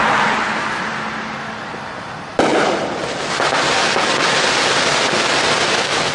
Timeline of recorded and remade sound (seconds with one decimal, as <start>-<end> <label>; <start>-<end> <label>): 0.0-6.1 recorded